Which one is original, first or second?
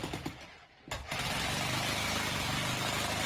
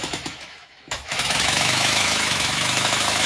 first